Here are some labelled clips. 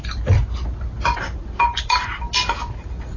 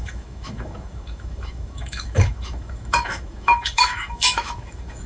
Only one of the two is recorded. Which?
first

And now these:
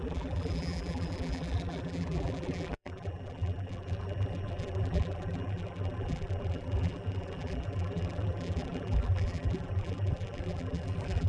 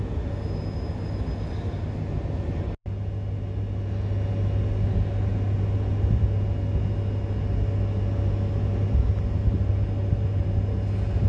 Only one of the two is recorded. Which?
second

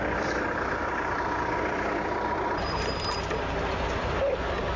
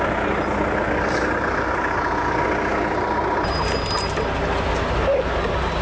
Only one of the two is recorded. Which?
second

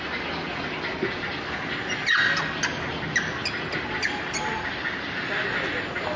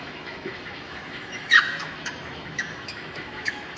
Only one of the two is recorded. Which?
first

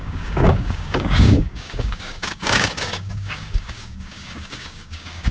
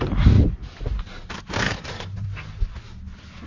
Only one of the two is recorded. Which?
second